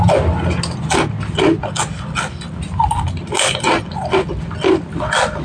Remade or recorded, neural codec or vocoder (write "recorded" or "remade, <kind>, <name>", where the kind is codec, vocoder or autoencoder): recorded